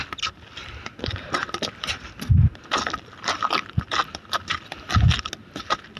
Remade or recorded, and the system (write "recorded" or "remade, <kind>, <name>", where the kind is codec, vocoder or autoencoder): recorded